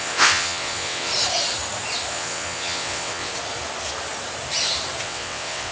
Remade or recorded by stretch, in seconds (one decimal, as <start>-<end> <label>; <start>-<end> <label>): 0.0-1.1 remade; 1.1-2.1 recorded; 2.1-3.3 remade; 3.3-5.0 recorded; 5.0-5.7 remade